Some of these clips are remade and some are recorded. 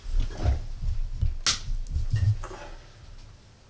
recorded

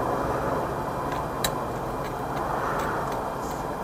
recorded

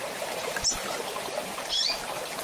recorded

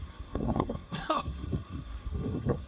remade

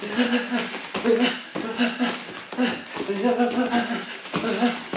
recorded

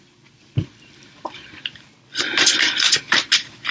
recorded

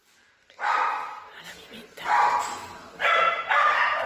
recorded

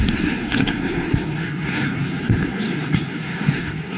remade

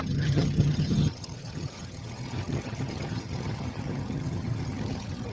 remade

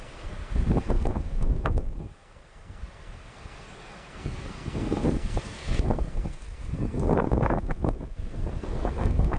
remade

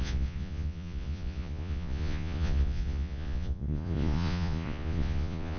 remade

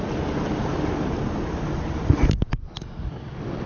recorded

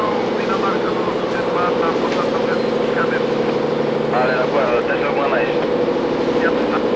recorded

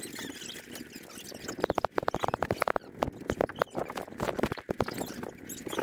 recorded